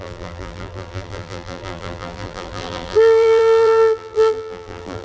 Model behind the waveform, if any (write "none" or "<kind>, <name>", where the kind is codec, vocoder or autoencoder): vocoder, BigVGAN v2